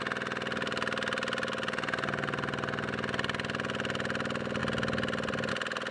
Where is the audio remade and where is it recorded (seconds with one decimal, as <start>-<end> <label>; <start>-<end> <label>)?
0.0-5.9 recorded

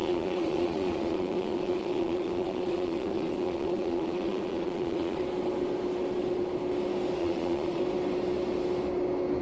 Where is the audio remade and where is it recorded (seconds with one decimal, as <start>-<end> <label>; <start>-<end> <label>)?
0.0-5.2 remade; 5.2-7.2 recorded; 7.2-7.8 remade; 7.8-9.4 recorded

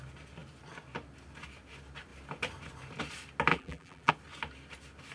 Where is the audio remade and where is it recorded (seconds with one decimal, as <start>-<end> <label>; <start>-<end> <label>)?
0.0-3.5 recorded; 3.5-4.1 remade; 4.1-5.1 recorded